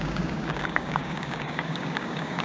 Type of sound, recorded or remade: remade